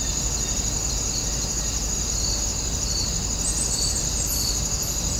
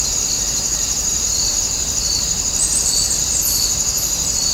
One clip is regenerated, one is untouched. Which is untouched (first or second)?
first